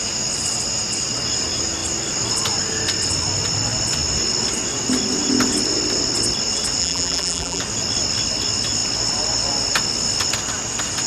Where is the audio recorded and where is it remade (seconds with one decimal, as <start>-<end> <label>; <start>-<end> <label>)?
0.0-6.8 recorded; 6.8-7.6 remade; 7.6-11.1 recorded